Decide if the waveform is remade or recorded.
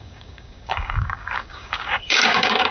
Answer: remade